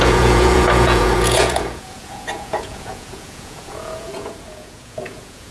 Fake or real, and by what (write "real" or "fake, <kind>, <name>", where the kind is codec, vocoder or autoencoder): fake, vocoder, Vocos